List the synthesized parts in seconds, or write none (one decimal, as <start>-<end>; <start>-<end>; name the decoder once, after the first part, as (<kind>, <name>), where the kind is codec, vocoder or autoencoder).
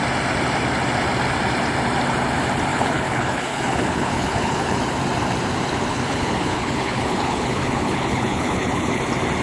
2.7-4.8 (codec, HILCodec); 5.9-9.0